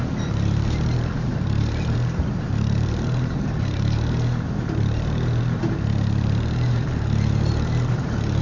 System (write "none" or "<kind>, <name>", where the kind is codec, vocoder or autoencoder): vocoder, BigVGAN v2